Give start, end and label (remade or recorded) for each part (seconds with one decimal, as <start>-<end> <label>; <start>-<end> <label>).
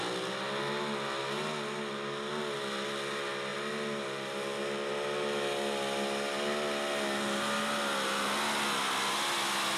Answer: 0.0-9.8 recorded